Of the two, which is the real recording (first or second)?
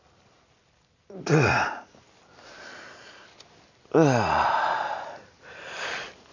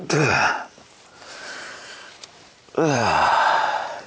first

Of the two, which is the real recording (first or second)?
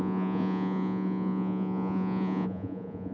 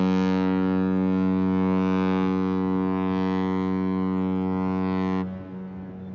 second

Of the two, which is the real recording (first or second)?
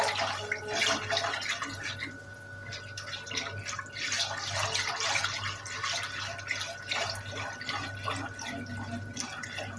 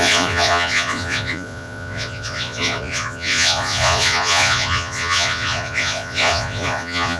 first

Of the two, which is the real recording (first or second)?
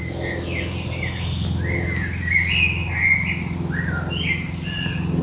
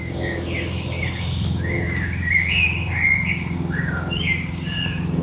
first